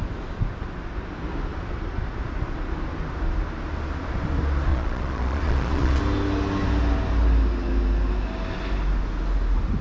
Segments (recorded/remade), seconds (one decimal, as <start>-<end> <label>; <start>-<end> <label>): 0.0-4.7 recorded; 4.7-6.0 remade; 6.0-9.8 recorded